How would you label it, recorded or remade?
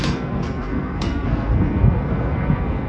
remade